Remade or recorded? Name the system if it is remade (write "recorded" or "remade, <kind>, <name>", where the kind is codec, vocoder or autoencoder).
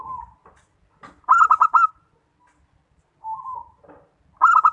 recorded